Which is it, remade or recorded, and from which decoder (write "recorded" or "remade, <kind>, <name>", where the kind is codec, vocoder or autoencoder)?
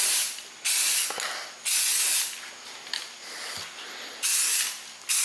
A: recorded